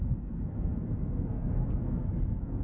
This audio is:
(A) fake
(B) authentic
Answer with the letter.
A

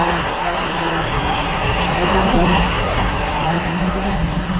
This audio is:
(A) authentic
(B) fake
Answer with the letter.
B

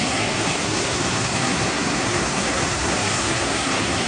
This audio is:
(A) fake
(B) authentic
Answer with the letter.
A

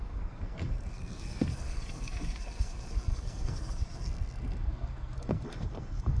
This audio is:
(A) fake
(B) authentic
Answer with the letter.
A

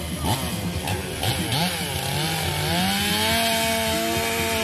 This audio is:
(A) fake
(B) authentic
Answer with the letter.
B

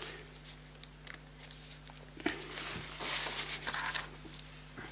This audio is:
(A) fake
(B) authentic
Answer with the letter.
B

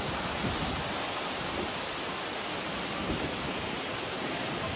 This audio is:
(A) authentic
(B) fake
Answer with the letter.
A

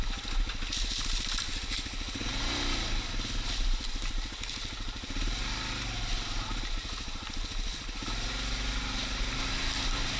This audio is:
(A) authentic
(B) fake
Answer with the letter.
A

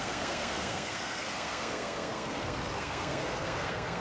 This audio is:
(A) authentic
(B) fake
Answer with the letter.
B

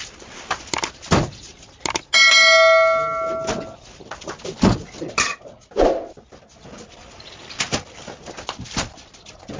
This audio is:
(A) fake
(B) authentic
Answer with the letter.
B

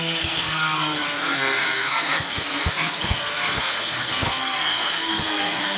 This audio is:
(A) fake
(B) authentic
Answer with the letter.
A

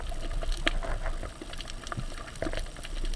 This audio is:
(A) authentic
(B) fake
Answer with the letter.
A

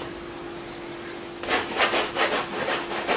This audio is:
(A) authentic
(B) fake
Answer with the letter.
A